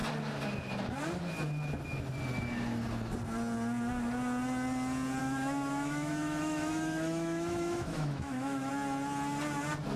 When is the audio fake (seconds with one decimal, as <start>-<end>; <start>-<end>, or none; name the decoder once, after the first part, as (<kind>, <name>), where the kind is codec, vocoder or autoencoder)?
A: 5.2-8.7 (autoencoder, DAC-VAE)